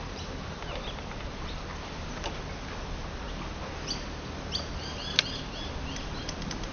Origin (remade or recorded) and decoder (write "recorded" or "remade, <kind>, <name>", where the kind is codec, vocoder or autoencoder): recorded